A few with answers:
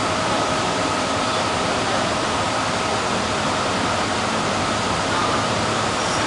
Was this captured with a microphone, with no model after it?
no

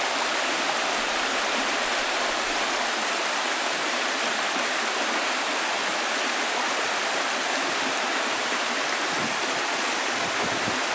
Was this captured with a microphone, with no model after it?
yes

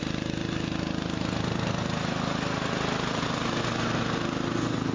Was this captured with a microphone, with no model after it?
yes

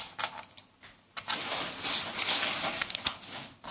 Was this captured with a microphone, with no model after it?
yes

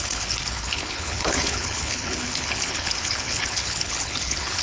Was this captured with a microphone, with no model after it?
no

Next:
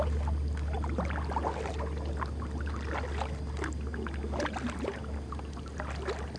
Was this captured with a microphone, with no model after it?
yes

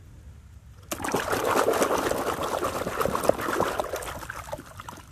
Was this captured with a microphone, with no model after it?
yes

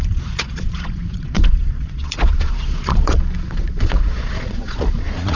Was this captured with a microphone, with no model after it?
no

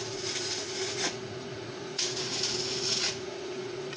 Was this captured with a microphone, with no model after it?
no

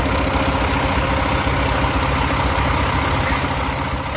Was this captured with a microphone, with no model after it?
yes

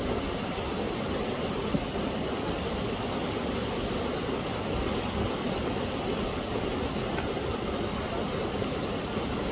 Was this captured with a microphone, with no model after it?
yes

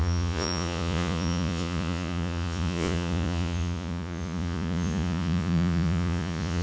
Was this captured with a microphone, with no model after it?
no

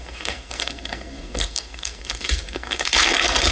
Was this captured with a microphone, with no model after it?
no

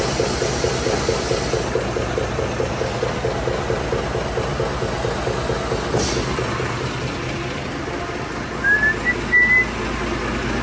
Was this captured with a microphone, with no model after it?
yes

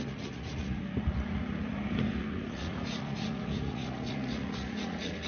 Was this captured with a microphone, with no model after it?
no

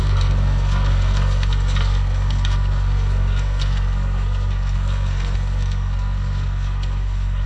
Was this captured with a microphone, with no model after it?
no